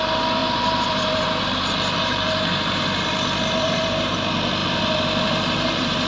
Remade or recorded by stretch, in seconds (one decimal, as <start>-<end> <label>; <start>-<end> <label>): 0.0-0.4 recorded; 0.4-4.1 remade; 4.1-4.6 recorded; 4.6-6.1 remade